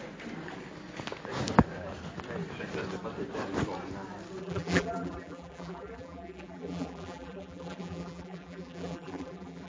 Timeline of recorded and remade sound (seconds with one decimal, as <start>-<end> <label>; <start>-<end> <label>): 0.0-4.4 recorded; 4.4-9.7 remade